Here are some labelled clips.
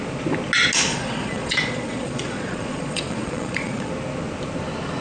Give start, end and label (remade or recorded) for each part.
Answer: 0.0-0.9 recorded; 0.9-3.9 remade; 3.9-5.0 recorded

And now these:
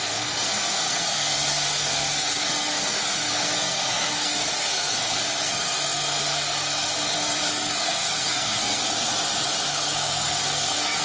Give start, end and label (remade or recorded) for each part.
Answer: 0.0-8.8 remade; 8.8-9.7 recorded; 9.7-11.0 remade

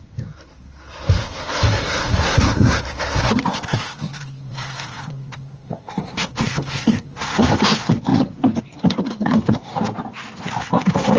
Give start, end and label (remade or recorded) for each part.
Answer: 0.0-9.7 remade; 9.7-10.5 recorded; 10.5-11.2 remade

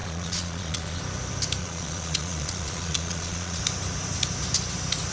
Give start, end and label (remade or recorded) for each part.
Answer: 0.0-1.0 remade; 1.0-1.6 recorded; 1.6-3.6 remade; 3.6-5.1 recorded

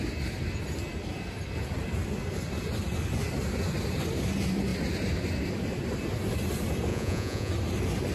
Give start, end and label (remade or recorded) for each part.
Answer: 0.0-6.9 recorded; 6.9-7.5 remade; 7.5-8.1 recorded

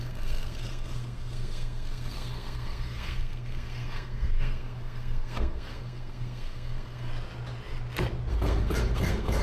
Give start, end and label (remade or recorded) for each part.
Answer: 0.0-7.1 remade; 7.1-8.3 recorded; 8.3-9.4 remade